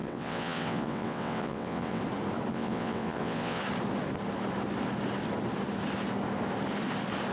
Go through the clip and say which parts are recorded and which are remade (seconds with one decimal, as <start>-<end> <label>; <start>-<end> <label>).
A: 0.0-2.0 remade; 2.0-2.5 recorded; 2.5-3.6 remade; 3.6-7.3 recorded